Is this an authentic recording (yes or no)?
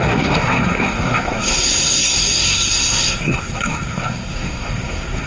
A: no